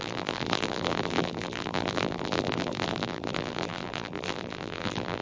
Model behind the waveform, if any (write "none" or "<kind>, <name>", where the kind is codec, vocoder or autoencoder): vocoder, BigVGAN v2